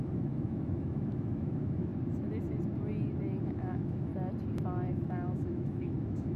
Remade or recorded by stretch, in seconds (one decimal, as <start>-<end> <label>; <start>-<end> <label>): 0.0-1.9 remade; 1.9-3.4 recorded; 3.4-4.1 remade; 4.1-4.9 recorded; 4.9-6.4 remade